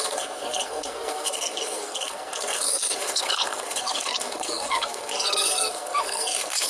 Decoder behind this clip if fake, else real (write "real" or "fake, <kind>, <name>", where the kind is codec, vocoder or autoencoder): fake, codec, SNAC